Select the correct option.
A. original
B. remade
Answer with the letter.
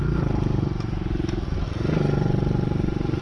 A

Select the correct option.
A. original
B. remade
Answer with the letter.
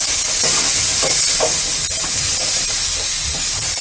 A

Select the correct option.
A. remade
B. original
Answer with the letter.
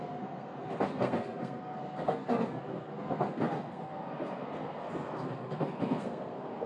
A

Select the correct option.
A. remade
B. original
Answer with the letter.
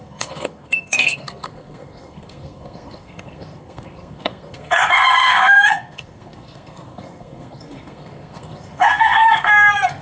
A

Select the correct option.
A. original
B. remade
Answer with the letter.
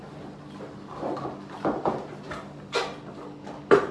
A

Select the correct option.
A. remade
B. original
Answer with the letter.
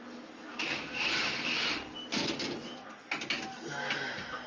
B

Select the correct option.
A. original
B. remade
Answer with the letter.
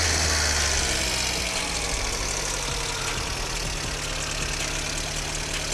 A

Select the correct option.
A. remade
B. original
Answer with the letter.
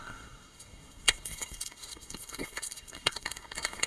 A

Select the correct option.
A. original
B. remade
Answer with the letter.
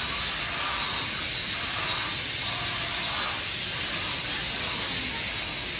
A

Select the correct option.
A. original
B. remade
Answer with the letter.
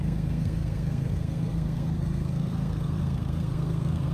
B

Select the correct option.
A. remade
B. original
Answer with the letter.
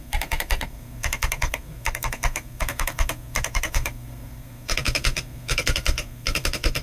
A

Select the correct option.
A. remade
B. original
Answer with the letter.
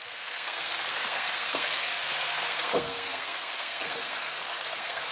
A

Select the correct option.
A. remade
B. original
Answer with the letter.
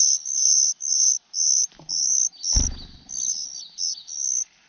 B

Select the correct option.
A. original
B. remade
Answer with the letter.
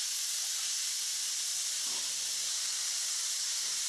A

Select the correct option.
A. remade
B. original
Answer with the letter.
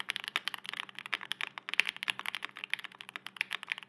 B